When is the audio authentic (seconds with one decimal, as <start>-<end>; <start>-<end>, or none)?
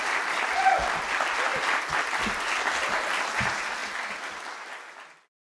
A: 0.0-5.5